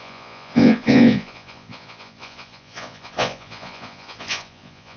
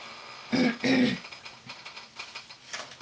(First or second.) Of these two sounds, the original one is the second